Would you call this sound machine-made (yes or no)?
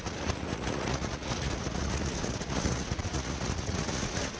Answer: yes